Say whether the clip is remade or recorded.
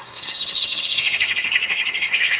remade